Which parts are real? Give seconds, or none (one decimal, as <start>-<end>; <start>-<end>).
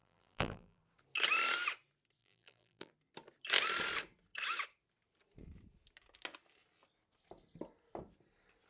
0.8-2.2; 2.9-8.7